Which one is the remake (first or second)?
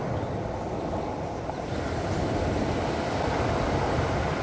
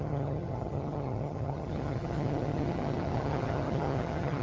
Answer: second